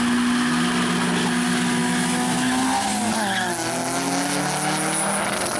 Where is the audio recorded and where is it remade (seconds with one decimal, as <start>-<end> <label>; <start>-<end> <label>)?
0.0-5.6 recorded